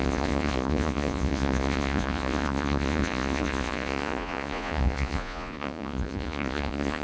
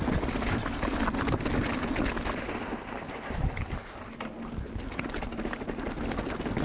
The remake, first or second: first